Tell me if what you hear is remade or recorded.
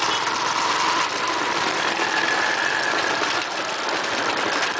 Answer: recorded